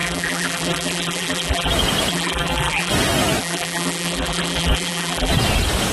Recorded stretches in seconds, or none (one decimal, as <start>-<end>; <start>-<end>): 1.7-2.1; 2.9-3.4; 5.3-5.9